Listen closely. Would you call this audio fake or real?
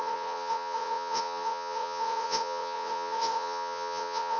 fake